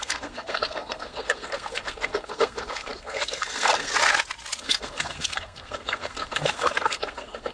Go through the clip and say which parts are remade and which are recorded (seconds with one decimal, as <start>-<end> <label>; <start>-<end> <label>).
0.0-3.9 remade; 3.9-4.6 recorded; 4.6-7.5 remade